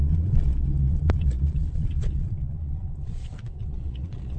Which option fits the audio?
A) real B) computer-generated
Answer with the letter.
B